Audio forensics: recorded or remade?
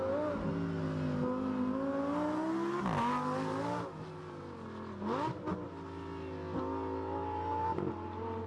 recorded